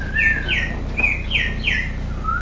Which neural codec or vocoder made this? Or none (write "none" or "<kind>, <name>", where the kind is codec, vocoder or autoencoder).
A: none